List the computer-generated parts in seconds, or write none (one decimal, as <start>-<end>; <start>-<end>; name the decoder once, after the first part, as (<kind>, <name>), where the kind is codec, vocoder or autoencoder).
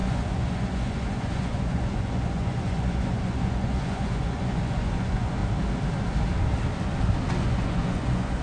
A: 0.0-5.4 (vocoder, Vocos); 7.3-8.4